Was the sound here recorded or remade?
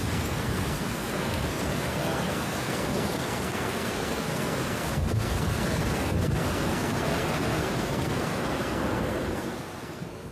remade